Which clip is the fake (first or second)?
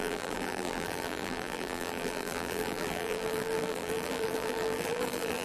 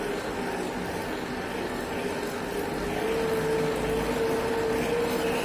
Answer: first